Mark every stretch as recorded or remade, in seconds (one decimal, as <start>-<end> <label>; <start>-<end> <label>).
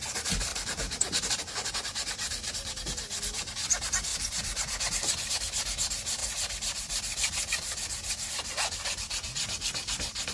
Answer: 0.0-4.1 recorded; 4.1-5.3 remade; 5.3-6.2 recorded; 6.2-8.3 remade; 8.3-10.3 recorded